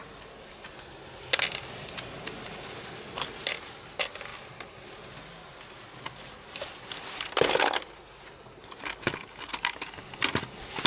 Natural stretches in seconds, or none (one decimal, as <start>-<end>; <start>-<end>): 0.0-10.9